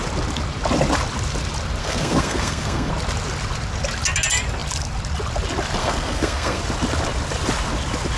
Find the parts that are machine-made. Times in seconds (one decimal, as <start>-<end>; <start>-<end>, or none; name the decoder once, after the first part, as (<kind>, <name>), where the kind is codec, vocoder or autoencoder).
1.8-2.9 (codec, SNAC); 5.8-6.6